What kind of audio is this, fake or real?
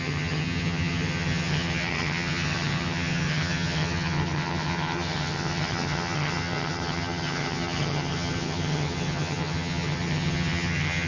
fake